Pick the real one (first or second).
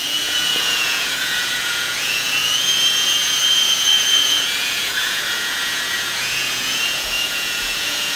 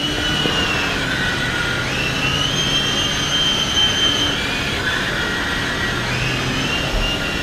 second